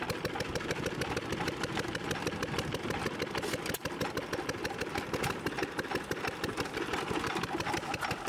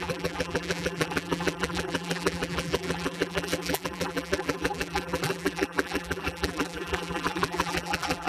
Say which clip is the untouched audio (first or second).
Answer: first